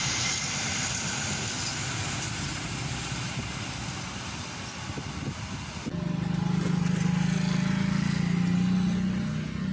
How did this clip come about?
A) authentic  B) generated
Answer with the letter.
A